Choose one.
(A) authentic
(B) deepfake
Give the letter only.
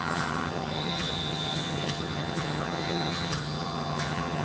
B